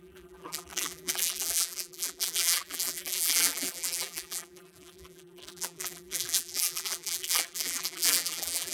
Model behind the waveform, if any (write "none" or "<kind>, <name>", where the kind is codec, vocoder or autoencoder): vocoder, BigVGAN v2